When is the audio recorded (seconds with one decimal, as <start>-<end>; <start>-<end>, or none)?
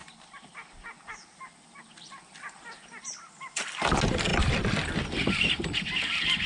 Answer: 3.9-4.3; 5.5-6.5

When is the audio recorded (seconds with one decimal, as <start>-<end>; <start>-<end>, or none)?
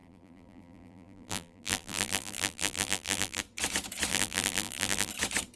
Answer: 3.4-4.1; 5.1-5.6